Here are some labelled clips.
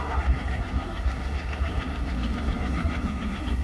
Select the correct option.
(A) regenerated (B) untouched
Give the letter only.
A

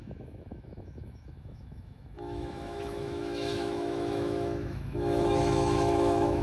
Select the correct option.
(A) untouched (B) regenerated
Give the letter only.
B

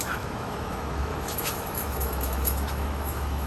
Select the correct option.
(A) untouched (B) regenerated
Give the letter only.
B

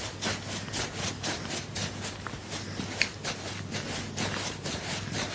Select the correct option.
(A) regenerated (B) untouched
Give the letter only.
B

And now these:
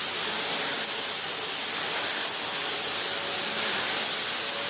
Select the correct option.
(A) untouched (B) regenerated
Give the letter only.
B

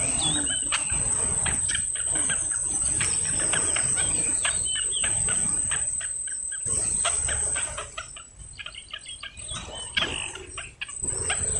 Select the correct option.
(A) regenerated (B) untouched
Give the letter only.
B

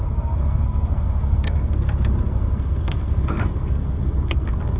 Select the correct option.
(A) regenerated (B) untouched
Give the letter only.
A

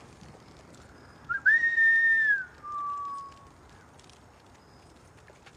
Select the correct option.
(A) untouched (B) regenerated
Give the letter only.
A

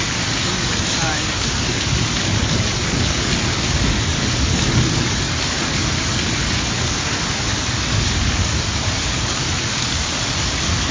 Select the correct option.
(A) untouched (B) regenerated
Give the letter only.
B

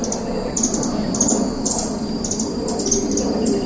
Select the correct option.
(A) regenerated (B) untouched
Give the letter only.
B